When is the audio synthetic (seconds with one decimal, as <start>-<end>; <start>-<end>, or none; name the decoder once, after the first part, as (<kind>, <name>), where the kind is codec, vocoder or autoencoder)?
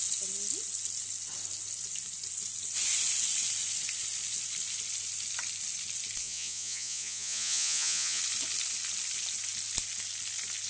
6.2-8.2 (vocoder, Vocos)